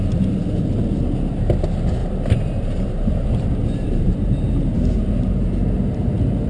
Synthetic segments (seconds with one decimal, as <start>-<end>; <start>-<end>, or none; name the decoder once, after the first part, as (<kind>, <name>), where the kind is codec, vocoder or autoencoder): 2.0-5.5 (vocoder, BigVGAN v2)